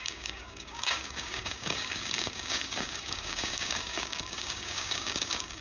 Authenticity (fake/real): fake